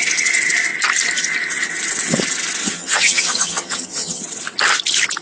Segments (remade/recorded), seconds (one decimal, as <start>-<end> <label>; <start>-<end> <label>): 0.0-2.6 recorded; 2.6-4.2 remade; 4.2-5.2 recorded